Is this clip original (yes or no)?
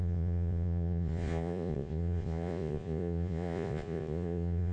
no